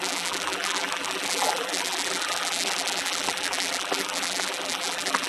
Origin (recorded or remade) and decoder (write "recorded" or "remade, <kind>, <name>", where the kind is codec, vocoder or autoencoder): remade, vocoder, BigVGAN v2